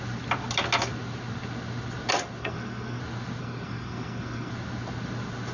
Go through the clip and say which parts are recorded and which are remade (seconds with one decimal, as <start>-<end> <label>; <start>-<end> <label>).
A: 0.0-2.4 recorded; 2.4-3.0 remade; 3.0-3.4 recorded; 3.4-4.5 remade; 4.5-5.5 recorded